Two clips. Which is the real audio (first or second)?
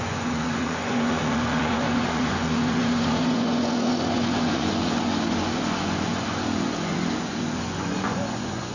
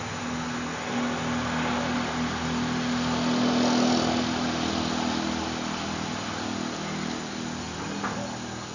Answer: second